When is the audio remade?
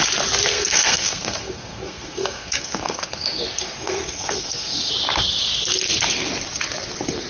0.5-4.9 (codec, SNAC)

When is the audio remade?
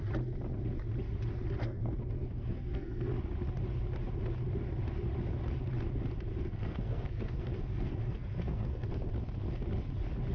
1.6-3.1 (codec, SNAC); 6.3-8.9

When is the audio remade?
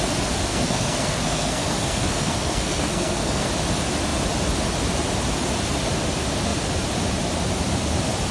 0.5-3.5 (codec, SNAC)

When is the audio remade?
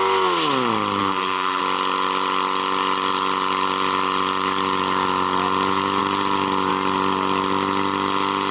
1.0-1.6 (codec, SNAC)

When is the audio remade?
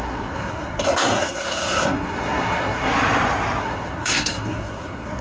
0.0-2.9 (codec, SNAC); 3.6-5.2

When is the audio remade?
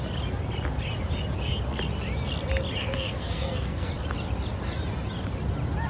2.8-3.9 (codec, SNAC)